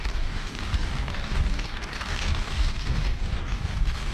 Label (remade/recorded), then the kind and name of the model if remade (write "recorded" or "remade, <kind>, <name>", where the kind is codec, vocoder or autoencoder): remade, codec, DAC